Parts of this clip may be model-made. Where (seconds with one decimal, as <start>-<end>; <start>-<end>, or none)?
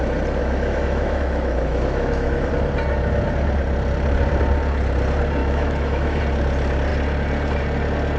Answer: 0.4-2.5; 5.4-6.2